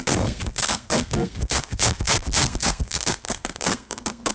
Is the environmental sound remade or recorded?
remade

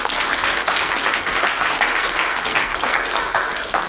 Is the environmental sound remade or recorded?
remade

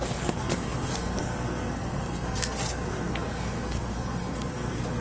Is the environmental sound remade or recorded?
remade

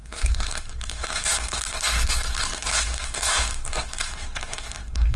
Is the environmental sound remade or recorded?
remade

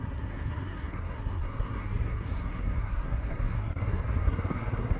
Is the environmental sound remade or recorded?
remade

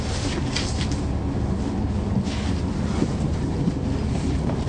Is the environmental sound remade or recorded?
recorded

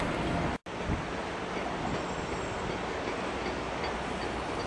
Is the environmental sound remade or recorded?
recorded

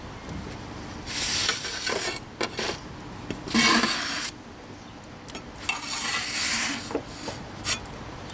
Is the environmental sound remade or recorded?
recorded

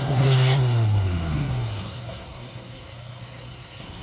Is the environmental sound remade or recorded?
remade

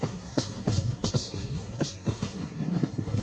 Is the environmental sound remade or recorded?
remade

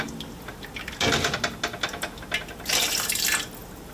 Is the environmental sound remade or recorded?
recorded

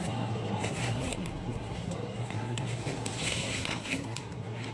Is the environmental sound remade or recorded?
remade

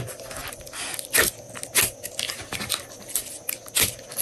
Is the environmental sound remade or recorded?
recorded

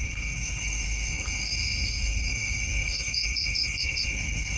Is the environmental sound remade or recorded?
remade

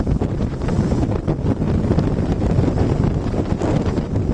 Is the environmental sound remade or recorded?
recorded